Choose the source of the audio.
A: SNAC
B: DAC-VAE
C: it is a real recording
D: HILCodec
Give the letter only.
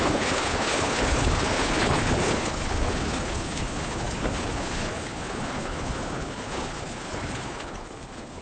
D